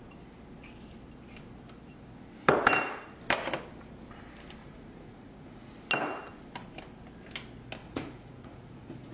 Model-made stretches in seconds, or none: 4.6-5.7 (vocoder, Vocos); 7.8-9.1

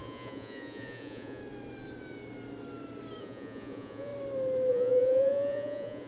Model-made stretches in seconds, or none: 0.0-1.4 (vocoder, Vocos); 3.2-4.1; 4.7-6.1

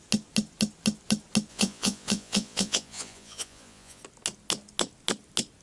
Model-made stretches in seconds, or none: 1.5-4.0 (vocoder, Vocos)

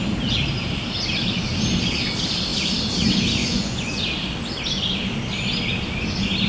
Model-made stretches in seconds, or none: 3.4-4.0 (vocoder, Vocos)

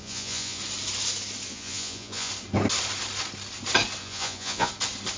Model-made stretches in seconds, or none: 0.0-0.6 (vocoder, Vocos); 1.5-2.3; 4.0-4.7

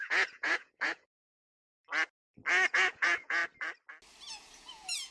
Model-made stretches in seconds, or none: 0.0-1.7 (vocoder, Vocos); 2.7-3.4; 4.3-5.1